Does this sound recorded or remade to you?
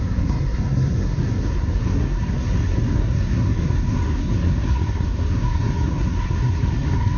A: remade